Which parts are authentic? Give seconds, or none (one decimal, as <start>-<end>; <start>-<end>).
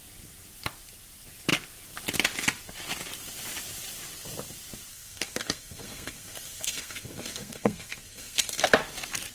0.0-4.9; 8.7-9.3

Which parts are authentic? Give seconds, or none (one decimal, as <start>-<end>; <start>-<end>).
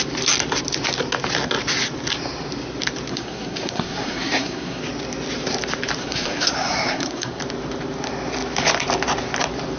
0.0-3.1; 4.8-6.0; 7.4-9.8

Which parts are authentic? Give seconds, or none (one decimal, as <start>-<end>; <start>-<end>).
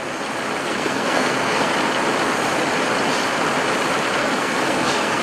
0.0-0.6; 1.7-4.2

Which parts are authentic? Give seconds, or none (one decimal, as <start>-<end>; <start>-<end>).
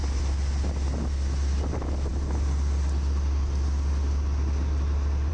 0.0-5.3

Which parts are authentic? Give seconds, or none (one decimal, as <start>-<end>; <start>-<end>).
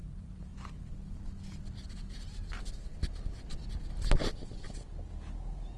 0.0-5.8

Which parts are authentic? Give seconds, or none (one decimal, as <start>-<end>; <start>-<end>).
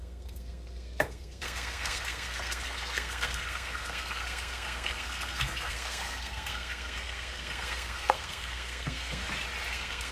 9.2-9.7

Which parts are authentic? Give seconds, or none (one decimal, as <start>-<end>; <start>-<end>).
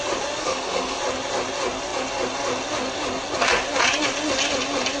0.0-0.4; 1.0-5.0